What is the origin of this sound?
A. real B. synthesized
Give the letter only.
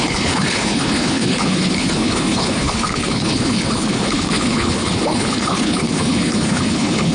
B